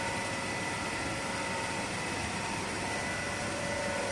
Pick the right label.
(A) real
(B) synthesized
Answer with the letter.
A